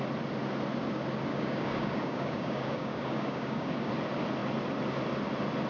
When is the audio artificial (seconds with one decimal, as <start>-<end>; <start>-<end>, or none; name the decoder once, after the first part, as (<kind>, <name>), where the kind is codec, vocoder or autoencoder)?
1.3-3.9 (codec, DAC)

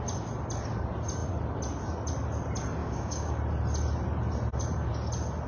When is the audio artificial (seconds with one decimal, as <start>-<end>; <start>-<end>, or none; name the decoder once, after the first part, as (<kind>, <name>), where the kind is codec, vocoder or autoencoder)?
2.8-3.4 (codec, DAC)

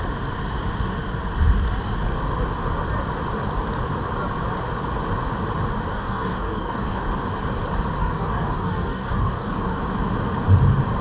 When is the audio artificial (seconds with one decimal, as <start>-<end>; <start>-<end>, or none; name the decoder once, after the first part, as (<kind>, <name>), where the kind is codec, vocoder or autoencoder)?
5.9-7.0 (codec, DAC); 8.0-9.8

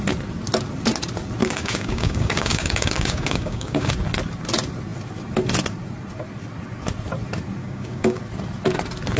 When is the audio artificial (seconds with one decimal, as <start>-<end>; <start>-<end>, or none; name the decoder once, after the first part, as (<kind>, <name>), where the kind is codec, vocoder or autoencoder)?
1.4-3.9 (codec, DAC); 7.6-8.2

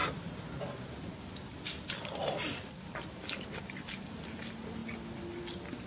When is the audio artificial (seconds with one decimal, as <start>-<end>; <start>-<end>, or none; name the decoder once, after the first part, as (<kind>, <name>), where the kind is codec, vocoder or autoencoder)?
none